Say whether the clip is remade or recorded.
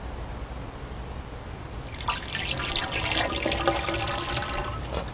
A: recorded